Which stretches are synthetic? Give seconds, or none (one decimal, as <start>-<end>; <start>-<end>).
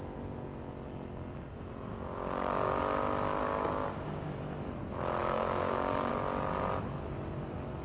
1.9-2.8; 3.4-4.4; 5.2-6.1